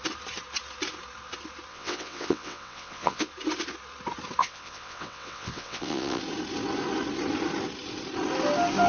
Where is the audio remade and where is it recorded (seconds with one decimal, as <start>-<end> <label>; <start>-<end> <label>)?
0.0-1.7 recorded; 1.7-3.3 remade; 3.3-4.4 recorded; 4.4-6.2 remade; 6.2-8.9 recorded